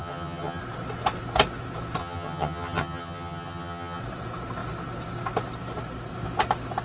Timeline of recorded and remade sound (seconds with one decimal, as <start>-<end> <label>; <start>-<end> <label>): 0.0-0.6 remade; 0.6-2.0 recorded; 2.0-4.0 remade; 4.0-6.8 recorded